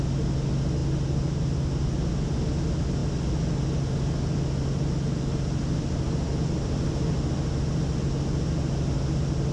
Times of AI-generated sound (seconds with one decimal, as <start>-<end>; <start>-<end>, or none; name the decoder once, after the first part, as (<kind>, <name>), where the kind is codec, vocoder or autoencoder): none